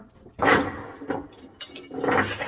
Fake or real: real